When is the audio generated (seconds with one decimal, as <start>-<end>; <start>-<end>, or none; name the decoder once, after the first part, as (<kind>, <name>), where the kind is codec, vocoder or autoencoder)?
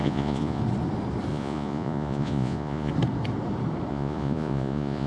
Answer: 0.0-0.6 (vocoder, Vocos); 1.3-2.9; 3.9-5.1